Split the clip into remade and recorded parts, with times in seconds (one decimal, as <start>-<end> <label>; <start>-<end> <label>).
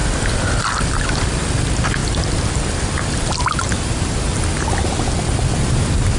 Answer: 0.0-1.4 remade; 1.4-2.0 recorded; 2.0-3.1 remade; 3.1-6.2 recorded